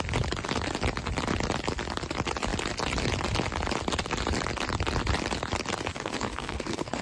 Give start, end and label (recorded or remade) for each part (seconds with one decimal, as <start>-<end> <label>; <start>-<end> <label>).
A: 0.0-5.9 recorded; 5.9-7.0 remade